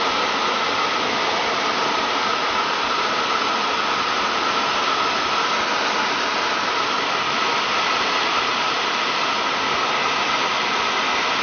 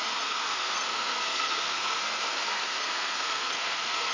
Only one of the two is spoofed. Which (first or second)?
second